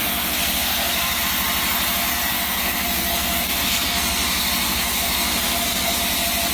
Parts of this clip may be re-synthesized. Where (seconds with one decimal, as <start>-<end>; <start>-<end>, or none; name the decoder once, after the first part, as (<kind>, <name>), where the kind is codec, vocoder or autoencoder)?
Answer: 0.0-1.2 (codec, SNAC); 2.1-6.0